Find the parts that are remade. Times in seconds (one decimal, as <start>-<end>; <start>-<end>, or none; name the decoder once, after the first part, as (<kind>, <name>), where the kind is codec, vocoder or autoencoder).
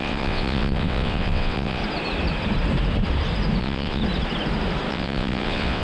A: 0.0-1.8 (vocoder, WaveNeXt); 3.6-4.0; 4.9-5.8